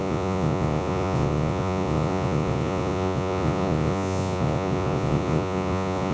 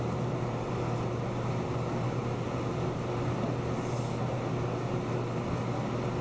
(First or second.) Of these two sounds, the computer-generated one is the first